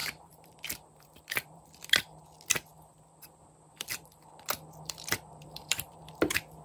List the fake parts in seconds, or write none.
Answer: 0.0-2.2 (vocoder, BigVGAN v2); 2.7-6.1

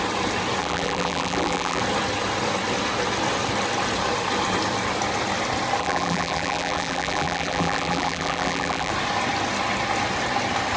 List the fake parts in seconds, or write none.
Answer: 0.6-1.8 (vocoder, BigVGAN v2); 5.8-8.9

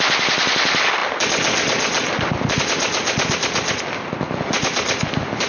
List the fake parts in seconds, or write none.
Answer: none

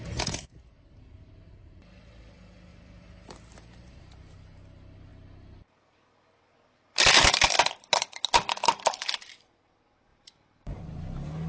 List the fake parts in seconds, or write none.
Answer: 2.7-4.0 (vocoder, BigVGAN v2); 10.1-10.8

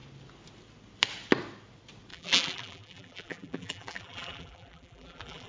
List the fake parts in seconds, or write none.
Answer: 2.1-5.5 (vocoder, BigVGAN v2)

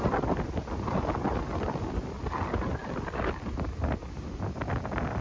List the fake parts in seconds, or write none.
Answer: none

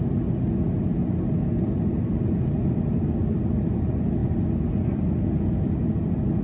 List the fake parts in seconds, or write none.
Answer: none